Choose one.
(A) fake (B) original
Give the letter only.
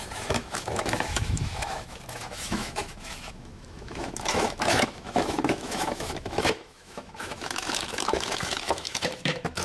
A